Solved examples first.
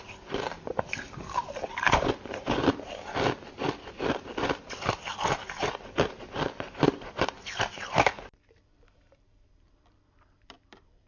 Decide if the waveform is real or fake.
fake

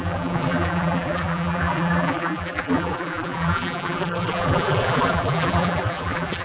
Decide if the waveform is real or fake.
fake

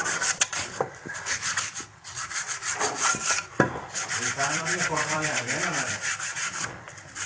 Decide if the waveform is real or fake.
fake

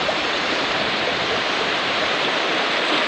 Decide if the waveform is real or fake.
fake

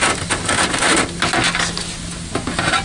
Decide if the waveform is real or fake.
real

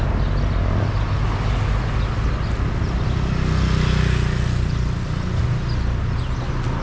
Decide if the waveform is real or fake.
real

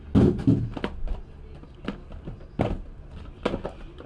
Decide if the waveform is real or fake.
real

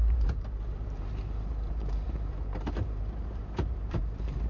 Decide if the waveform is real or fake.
fake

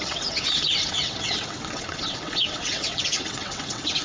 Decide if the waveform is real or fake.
fake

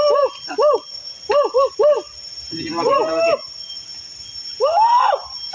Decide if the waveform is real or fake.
fake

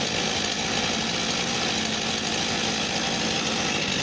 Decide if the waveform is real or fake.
real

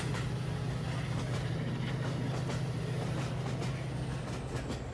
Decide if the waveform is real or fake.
real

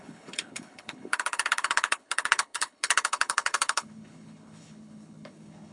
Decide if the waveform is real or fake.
fake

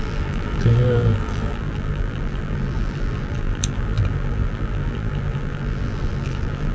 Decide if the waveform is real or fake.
fake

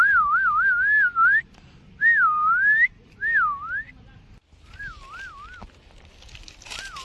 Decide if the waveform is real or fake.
real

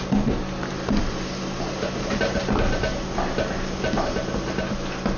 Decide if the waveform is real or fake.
real